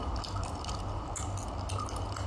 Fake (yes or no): no